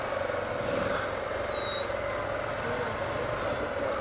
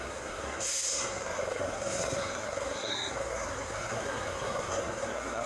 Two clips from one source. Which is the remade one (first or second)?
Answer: second